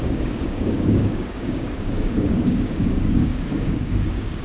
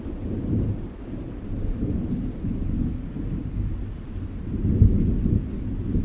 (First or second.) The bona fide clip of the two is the second